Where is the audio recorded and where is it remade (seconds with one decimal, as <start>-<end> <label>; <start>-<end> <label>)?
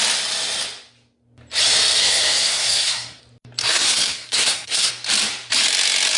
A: 0.0-2.0 recorded; 2.0-3.2 remade; 3.2-3.6 recorded; 3.6-4.9 remade; 4.9-6.2 recorded